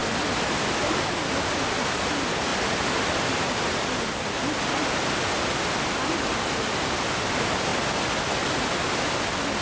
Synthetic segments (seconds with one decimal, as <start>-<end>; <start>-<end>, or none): none